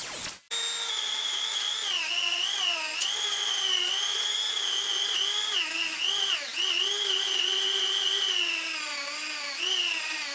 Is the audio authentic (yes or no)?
yes